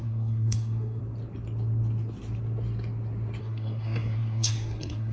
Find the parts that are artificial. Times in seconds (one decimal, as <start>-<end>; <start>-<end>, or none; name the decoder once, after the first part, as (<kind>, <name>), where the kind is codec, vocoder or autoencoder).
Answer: 0.0-1.0 (codec, SNAC); 3.4-5.1

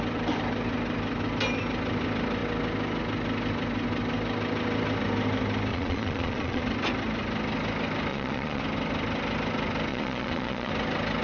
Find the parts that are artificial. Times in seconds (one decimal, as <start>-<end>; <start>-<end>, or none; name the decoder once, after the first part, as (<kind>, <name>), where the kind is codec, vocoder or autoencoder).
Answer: 5.7-6.6 (vocoder, Vocos); 8.1-8.6; 9.9-10.7

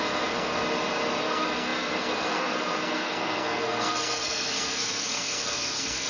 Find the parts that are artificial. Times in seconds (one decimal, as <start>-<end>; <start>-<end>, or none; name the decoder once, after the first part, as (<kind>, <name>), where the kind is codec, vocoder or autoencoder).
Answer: 0.0-0.6 (codec, SNAC); 1.2-6.1